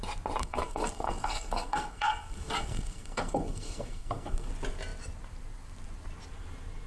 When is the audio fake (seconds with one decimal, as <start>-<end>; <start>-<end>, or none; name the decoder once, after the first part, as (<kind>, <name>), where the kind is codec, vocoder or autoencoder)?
0.4-4.5 (codec, SNAC)